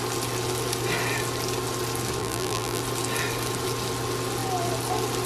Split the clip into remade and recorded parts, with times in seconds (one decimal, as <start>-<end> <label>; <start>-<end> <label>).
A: 0.0-2.2 recorded; 2.2-2.8 remade; 2.8-5.3 recorded